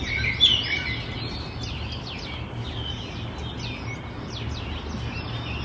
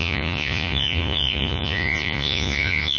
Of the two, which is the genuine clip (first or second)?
first